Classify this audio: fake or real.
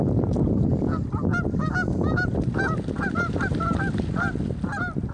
real